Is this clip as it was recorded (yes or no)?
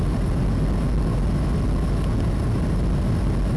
yes